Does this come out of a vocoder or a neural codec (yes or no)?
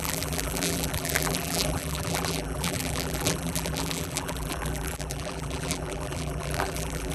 yes